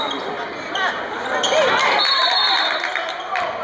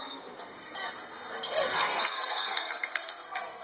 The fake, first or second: second